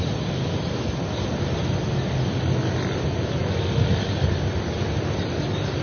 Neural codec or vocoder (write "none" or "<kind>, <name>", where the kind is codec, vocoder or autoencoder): none